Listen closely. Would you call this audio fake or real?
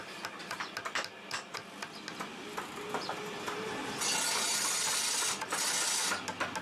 real